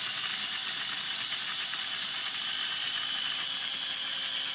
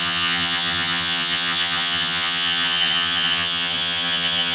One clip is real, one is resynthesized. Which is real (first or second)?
first